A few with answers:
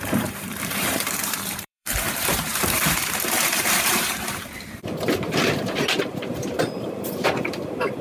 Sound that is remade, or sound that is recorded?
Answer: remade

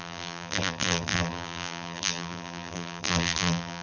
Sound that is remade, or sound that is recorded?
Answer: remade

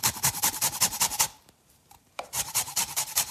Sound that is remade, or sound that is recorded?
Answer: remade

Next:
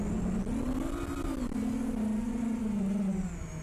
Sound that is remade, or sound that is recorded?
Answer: recorded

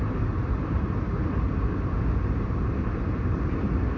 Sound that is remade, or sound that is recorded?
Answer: remade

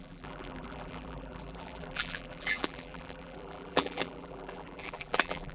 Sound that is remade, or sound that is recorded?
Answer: remade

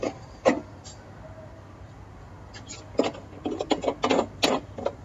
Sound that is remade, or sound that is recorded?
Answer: recorded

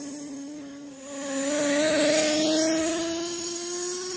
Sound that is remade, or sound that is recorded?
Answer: recorded